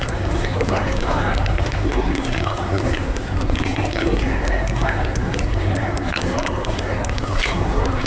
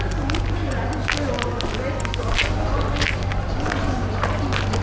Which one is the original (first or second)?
second